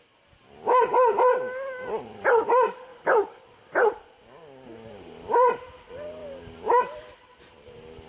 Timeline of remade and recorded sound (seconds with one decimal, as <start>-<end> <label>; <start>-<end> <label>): 0.0-2.9 recorded; 2.9-5.3 remade; 5.3-8.1 recorded